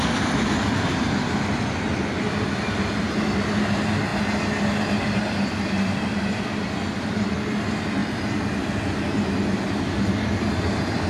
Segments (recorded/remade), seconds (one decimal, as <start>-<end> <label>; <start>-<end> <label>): 0.0-11.1 recorded